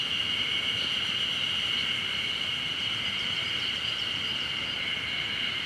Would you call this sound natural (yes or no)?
yes